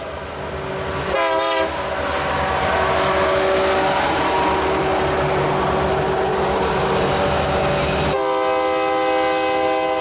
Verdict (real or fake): real